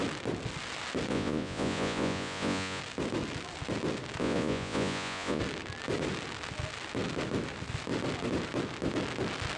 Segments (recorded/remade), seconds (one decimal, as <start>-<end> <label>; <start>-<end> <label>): 0.0-1.1 recorded; 1.1-2.8 remade; 2.8-4.2 recorded; 4.2-5.4 remade; 5.4-9.6 recorded